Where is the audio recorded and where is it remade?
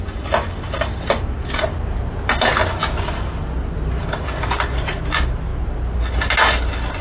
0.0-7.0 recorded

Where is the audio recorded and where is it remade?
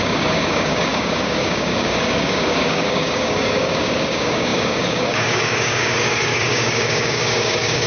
0.0-7.9 remade